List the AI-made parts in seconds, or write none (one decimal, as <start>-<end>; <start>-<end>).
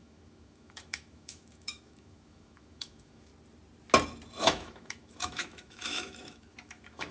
0.0-3.3; 4.4-7.1